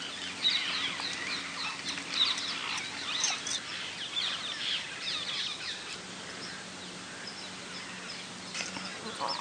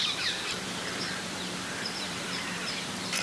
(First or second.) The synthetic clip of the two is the second